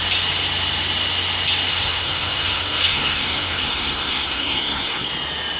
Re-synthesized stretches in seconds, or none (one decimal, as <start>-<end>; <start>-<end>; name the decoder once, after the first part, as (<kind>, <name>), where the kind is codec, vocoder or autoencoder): 1.7-5.1 (codec, SNAC)